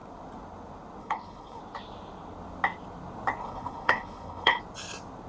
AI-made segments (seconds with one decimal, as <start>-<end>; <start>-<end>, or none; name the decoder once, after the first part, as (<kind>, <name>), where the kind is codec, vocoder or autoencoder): 1.0-1.6 (codec, HILCodec); 3.4-4.6